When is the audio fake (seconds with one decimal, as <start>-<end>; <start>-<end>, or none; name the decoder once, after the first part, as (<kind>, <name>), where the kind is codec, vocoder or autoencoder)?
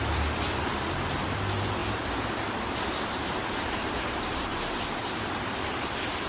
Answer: 0.0-6.3 (vocoder, BigVGAN v2)